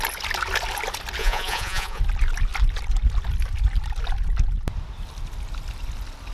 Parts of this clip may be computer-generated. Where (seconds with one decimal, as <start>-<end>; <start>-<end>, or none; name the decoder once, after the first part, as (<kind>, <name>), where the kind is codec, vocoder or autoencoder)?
1.2-2.0 (vocoder, Vocos)